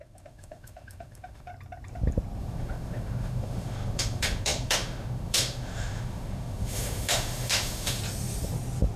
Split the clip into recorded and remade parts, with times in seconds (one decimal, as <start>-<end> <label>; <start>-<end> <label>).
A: 0.0-1.5 remade; 1.5-2.4 recorded; 2.4-8.0 remade; 8.0-9.0 recorded